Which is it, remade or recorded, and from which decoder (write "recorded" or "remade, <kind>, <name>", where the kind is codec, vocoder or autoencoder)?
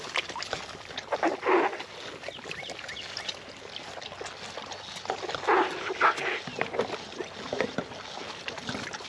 recorded